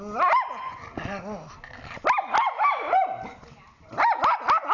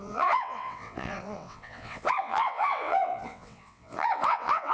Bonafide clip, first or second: first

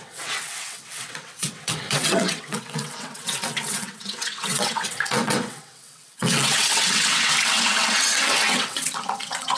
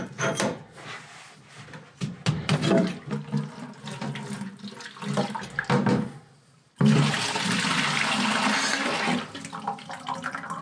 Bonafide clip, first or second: second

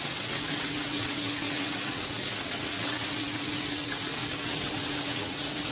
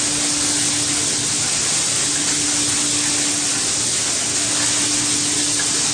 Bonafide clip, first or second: second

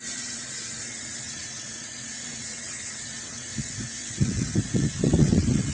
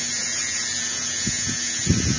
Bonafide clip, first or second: second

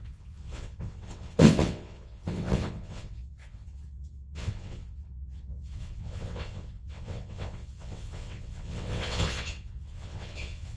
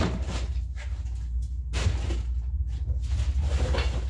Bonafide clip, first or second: second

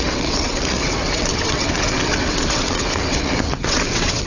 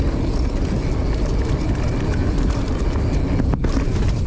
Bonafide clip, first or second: second